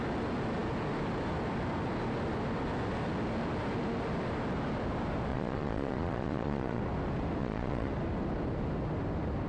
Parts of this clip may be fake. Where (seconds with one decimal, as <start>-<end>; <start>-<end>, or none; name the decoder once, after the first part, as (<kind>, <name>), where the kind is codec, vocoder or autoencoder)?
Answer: 5.3-6.8 (vocoder, Vocos); 7.4-7.9